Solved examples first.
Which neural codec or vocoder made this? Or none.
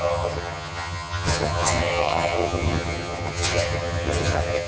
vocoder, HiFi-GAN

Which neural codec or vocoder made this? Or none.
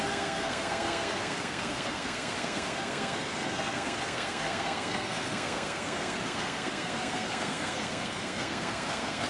codec, SNAC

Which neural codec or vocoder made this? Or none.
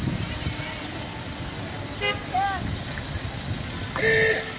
none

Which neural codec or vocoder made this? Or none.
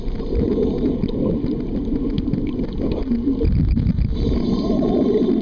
none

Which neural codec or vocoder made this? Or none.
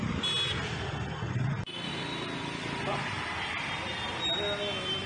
none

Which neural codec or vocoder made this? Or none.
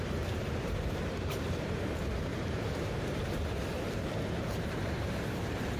vocoder, BigVGAN v2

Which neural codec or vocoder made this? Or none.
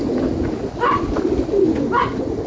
none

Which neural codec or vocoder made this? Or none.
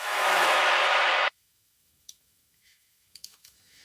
autoencoder, DAC-VAE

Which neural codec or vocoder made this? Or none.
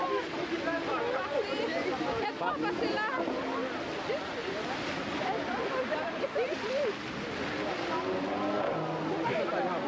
none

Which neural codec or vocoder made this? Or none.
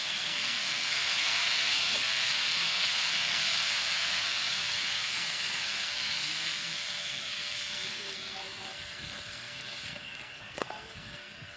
codec, SNAC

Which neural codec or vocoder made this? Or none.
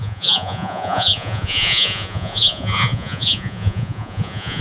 vocoder, Vocos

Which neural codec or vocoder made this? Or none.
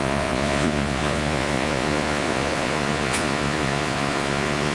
vocoder, Vocos